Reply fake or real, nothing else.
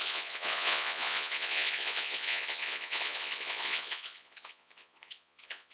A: fake